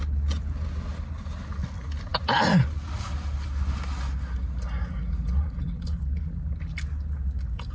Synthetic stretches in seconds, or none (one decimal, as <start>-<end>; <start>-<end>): none